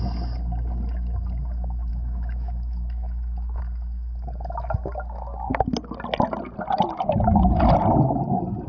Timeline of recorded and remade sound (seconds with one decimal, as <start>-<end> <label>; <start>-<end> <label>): 0.0-1.9 recorded; 1.9-3.6 remade; 3.6-8.7 recorded